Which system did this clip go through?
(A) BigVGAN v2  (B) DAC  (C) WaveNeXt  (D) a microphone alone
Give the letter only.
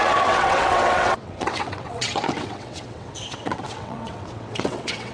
C